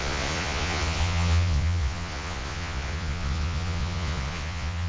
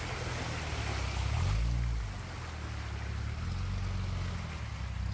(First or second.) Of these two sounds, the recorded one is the second